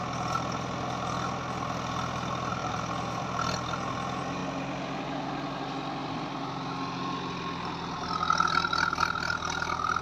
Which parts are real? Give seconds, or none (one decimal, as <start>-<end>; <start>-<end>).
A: 0.0-2.6; 3.2-10.0